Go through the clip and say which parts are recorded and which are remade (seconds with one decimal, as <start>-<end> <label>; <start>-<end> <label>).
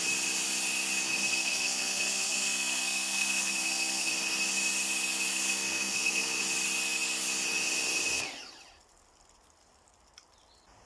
0.0-1.3 recorded; 1.3-4.1 remade; 4.1-5.3 recorded; 5.3-6.4 remade; 6.4-10.9 recorded